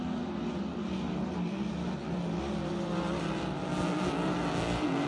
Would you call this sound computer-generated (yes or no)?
no